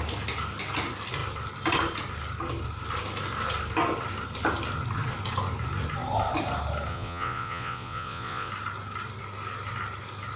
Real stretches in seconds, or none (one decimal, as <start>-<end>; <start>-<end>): 0.0-6.9; 8.5-10.4